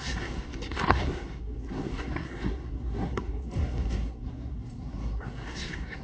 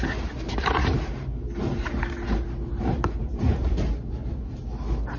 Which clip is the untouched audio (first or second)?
second